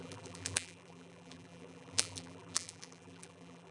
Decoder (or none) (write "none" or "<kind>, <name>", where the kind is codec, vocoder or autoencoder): vocoder, BigVGAN v2